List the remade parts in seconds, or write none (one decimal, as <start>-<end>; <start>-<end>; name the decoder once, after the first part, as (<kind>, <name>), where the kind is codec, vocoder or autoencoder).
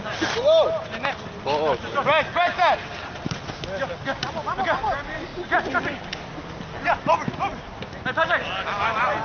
none